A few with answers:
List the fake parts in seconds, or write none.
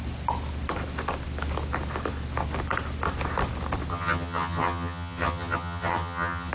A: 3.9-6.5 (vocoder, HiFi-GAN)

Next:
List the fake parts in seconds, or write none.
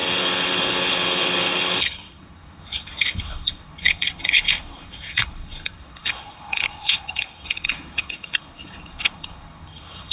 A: 0.0-10.1 (codec, HILCodec)